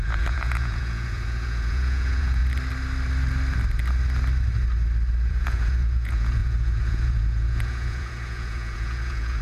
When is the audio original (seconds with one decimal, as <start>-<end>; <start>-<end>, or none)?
2.4-5.3

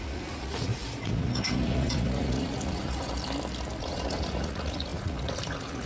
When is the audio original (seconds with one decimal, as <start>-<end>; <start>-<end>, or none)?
3.1-3.8

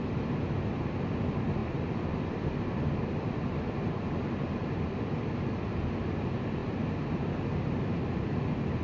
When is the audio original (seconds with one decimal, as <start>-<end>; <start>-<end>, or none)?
0.0-8.8

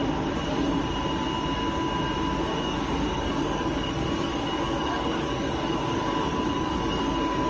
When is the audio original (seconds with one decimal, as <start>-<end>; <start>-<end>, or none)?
0.0-2.5; 7.0-7.5

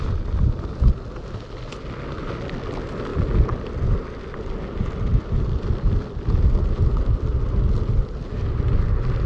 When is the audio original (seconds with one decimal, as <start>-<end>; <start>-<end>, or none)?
0.0-9.3

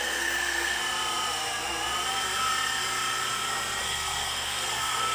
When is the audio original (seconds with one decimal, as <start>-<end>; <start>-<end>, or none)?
0.8-3.8

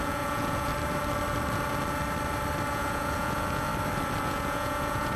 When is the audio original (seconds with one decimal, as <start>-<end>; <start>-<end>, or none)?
0.7-2.7; 3.7-4.2

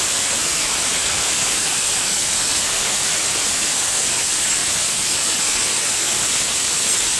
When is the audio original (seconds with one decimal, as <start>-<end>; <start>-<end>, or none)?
none